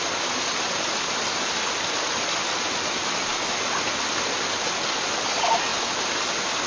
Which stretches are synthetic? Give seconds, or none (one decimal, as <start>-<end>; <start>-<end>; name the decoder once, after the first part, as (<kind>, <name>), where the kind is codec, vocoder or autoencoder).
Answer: none